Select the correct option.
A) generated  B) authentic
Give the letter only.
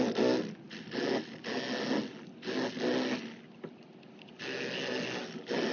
B